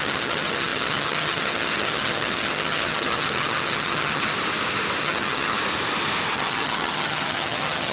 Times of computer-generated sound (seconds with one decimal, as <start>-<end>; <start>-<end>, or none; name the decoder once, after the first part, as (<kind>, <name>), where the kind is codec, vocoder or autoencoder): 0.0-4.3 (vocoder, HiFi-GAN); 5.0-5.6; 6.3-7.9